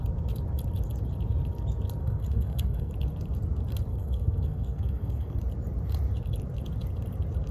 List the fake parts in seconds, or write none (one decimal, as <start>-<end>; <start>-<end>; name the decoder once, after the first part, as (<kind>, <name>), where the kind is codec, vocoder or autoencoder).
2.0-2.9 (codec, SNAC); 3.9-5.4